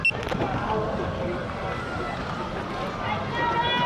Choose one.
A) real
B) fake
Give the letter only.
A